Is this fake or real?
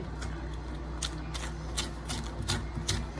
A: real